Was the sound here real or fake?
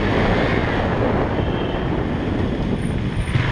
real